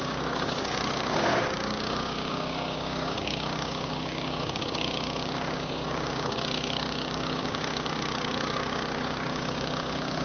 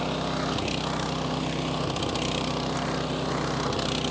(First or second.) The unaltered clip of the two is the second